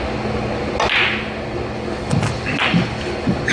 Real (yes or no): yes